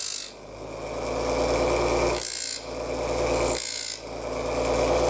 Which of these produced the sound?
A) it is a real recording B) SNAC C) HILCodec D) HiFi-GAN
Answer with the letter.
A